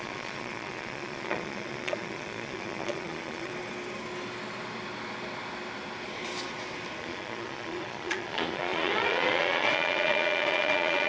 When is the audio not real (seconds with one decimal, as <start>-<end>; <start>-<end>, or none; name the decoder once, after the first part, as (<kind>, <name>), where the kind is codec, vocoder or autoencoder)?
0.0-3.5 (vocoder, Vocos); 7.0-11.1